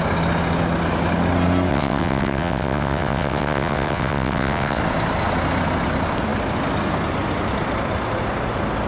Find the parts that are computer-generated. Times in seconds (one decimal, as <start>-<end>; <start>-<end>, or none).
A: 1.7-4.8